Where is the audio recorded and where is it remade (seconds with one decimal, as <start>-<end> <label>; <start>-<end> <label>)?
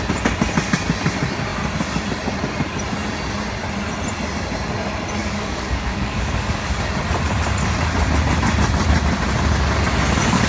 0.0-5.2 recorded; 5.2-6.8 remade; 6.8-10.5 recorded